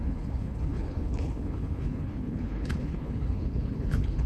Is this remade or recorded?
remade